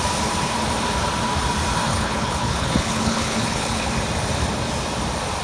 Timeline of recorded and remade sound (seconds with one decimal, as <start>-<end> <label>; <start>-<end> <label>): 0.0-1.9 recorded; 1.9-3.9 remade; 3.9-5.4 recorded